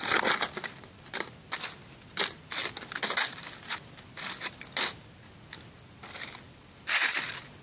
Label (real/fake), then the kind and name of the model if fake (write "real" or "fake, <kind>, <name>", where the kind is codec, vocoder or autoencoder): real